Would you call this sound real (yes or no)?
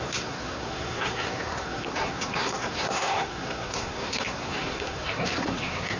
no